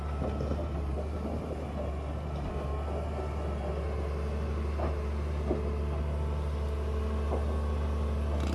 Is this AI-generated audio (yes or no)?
no